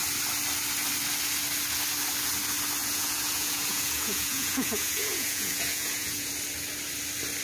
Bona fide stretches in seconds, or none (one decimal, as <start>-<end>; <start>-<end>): 0.0-2.8; 6.3-7.4